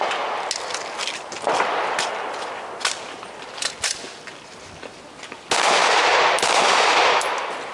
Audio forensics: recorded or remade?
recorded